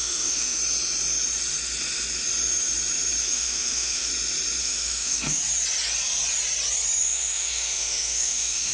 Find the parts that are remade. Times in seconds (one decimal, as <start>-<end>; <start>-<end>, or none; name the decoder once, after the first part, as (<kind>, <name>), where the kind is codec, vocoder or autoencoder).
0.0-0.6 (autoencoder, DAC-VAE); 3.2-4.1; 4.6-5.4; 7.0-8.7